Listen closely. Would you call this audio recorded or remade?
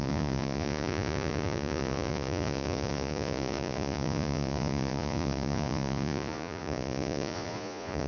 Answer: remade